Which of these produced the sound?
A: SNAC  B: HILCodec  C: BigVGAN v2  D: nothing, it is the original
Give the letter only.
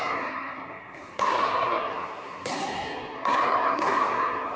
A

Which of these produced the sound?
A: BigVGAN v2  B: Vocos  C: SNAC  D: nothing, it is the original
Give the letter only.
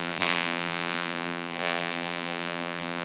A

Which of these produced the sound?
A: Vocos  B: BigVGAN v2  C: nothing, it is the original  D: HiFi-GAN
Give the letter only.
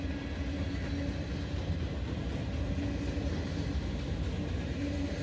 C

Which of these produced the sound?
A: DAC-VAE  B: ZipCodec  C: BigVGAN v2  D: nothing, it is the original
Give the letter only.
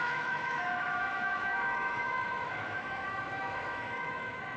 A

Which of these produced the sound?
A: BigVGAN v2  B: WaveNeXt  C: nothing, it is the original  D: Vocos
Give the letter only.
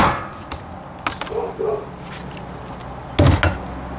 C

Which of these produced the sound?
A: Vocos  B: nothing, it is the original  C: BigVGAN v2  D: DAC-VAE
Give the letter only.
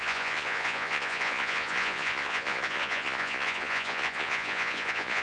A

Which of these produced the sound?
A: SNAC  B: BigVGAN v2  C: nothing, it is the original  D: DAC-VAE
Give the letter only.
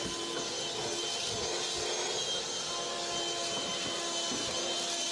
C